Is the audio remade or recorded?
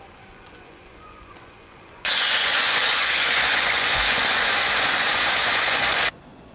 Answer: remade